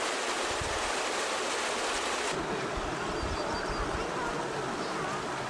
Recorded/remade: recorded